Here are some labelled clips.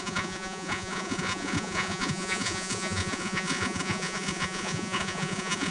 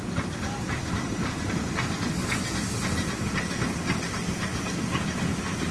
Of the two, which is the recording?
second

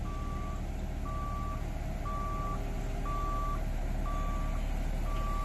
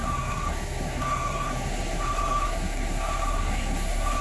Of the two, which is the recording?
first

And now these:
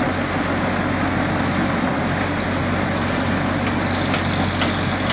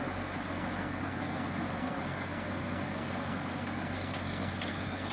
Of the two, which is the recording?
first